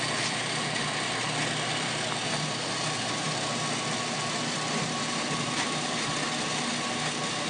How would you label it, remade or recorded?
recorded